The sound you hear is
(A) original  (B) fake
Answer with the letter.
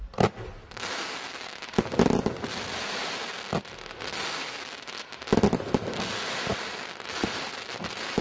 A